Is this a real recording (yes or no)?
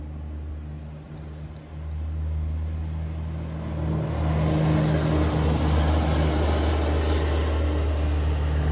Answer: yes